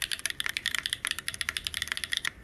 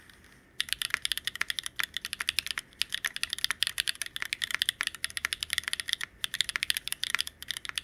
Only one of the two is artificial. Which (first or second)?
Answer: first